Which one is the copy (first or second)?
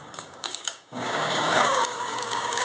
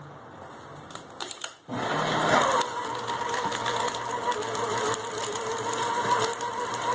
first